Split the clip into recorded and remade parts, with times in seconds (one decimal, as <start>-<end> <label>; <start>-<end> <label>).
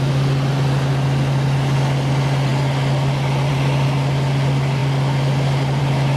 0.0-6.2 recorded